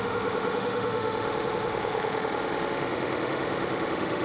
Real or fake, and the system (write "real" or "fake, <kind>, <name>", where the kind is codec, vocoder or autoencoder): fake, autoencoder, DAC-VAE